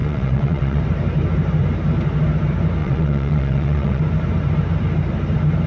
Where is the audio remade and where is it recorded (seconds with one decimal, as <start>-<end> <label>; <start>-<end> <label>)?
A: 0.0-0.8 remade; 0.8-2.8 recorded; 2.8-4.0 remade; 4.0-5.7 recorded